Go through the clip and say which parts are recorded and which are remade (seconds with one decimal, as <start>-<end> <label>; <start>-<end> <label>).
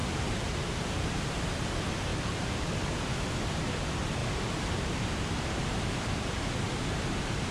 0.0-1.7 remade; 1.7-2.1 recorded; 2.1-2.8 remade; 2.8-4.2 recorded; 4.2-6.4 remade; 6.4-7.5 recorded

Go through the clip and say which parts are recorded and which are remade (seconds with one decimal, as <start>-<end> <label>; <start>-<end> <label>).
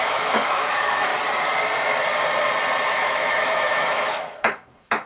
0.0-1.1 remade; 1.1-2.9 recorded; 2.9-5.1 remade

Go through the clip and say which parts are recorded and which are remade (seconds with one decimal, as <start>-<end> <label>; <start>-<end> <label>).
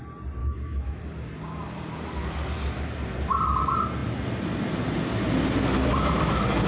0.0-0.4 recorded; 0.4-1.0 remade; 1.0-6.7 recorded